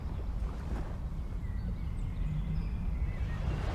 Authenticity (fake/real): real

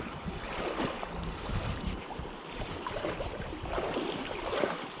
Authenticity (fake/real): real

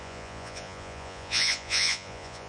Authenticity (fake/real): fake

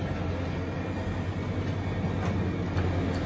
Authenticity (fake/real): real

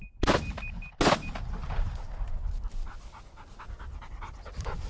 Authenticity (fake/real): real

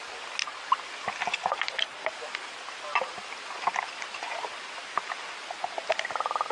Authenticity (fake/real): real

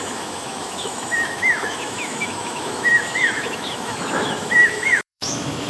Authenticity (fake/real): fake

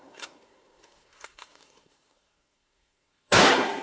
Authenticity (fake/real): fake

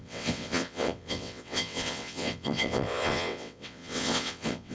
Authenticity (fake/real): fake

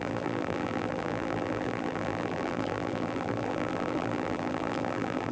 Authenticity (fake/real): fake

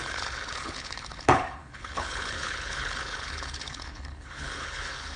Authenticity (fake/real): fake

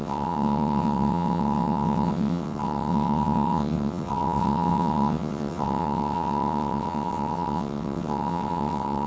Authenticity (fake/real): fake